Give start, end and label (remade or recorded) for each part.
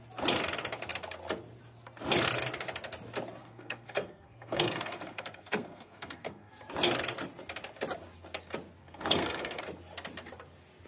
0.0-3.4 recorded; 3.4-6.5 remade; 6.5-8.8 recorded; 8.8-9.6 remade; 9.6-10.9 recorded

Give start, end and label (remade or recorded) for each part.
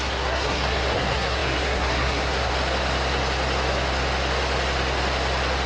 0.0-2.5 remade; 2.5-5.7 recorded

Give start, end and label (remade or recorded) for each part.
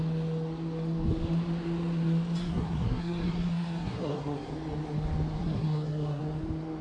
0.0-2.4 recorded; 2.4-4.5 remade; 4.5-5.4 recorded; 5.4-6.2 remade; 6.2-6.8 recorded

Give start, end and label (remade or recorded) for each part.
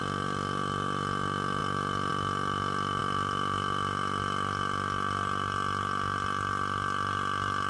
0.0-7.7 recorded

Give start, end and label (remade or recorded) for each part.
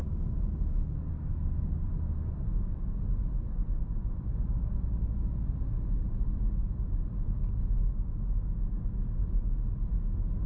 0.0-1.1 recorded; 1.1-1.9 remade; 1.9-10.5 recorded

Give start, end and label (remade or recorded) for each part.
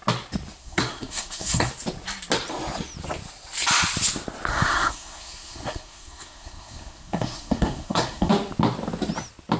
0.0-0.6 recorded; 0.6-1.7 remade; 1.7-4.5 recorded; 4.5-8.3 remade; 8.3-9.6 recorded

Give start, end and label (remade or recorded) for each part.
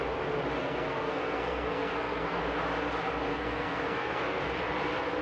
0.0-0.6 recorded; 0.6-2.4 remade; 2.4-3.3 recorded; 3.3-4.4 remade; 4.4-5.2 recorded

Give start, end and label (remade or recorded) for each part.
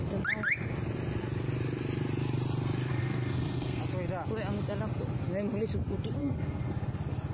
0.0-2.9 recorded; 2.9-3.8 remade; 3.8-6.2 recorded; 6.2-6.7 remade; 6.7-7.3 recorded